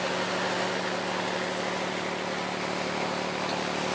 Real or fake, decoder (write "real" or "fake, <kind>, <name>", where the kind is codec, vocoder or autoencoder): real